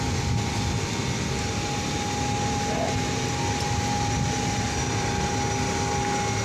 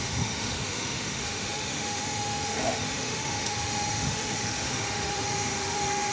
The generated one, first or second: second